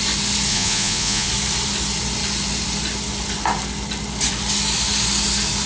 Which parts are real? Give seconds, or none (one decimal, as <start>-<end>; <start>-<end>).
0.0-0.5; 1.3-5.7